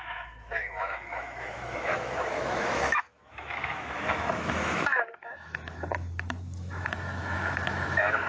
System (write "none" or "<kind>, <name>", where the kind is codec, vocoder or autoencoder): autoencoder, DAC-VAE